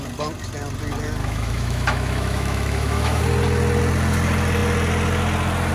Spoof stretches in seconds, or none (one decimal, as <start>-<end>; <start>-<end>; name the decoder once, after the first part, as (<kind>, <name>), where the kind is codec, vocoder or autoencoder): 1.2-3.2 (autoencoder, DAC-VAE)